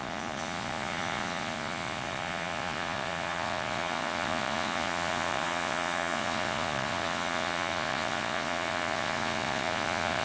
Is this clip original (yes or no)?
no